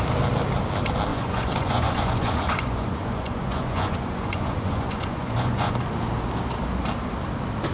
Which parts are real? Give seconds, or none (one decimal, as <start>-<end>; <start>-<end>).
0.0-1.1; 5.7-7.7